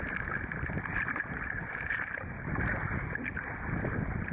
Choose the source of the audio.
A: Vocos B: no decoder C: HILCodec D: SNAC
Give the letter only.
B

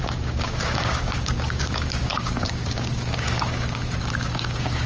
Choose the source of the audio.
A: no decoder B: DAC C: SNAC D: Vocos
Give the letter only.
B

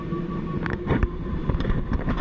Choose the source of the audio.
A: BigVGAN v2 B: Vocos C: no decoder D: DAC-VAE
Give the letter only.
A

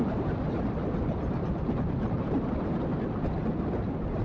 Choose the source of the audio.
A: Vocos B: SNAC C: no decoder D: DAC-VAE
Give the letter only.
C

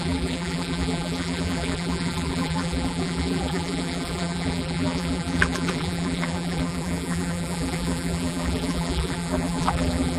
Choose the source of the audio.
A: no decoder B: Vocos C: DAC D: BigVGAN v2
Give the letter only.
D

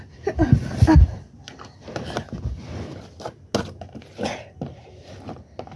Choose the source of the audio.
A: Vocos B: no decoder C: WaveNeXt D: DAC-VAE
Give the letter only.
B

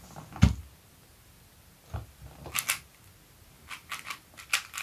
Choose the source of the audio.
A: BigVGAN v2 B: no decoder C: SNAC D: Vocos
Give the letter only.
B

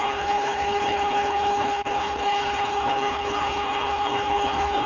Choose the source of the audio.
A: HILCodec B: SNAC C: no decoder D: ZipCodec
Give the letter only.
A